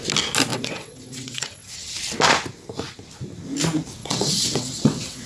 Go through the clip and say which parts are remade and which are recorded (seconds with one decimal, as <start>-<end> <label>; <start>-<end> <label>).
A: 0.0-0.5 recorded; 0.5-1.9 remade; 1.9-4.0 recorded; 4.0-5.3 remade